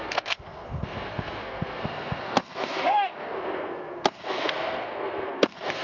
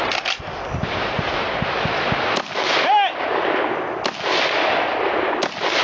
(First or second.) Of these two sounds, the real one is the second